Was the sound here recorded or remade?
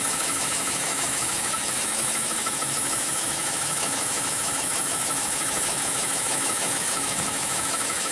remade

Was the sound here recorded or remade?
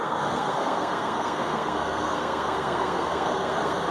remade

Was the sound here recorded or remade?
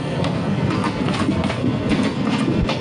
remade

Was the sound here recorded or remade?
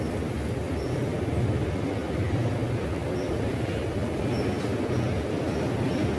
recorded